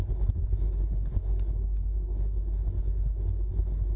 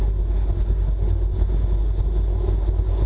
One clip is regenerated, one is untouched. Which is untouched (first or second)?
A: second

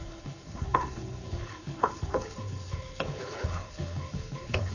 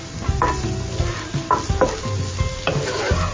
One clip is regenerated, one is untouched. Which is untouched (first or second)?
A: second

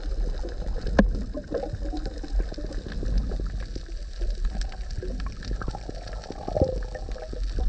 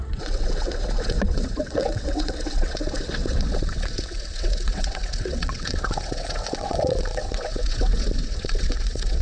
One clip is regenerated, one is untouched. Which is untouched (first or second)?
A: first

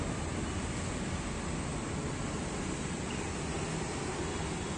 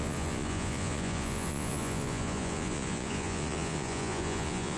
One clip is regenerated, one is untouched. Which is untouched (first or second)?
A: first